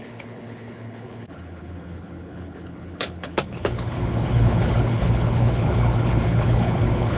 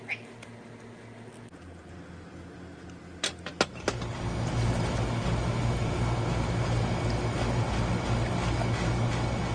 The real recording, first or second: second